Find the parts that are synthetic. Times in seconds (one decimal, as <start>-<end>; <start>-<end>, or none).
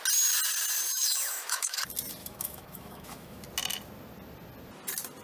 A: 0.9-1.8; 2.2-3.4